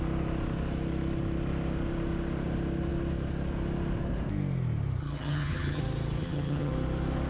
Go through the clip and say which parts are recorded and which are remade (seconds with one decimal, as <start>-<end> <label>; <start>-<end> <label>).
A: 0.0-5.0 recorded; 5.0-5.8 remade; 5.8-6.2 recorded; 6.2-6.7 remade; 6.7-7.3 recorded